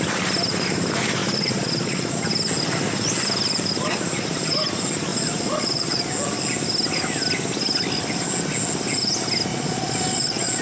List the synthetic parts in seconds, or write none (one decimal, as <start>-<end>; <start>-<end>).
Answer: 1.2-2.1; 5.1-6.1; 9.5-10.6